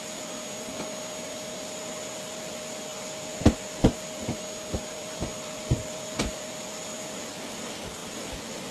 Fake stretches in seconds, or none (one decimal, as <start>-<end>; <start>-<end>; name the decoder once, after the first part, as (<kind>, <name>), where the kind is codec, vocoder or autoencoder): none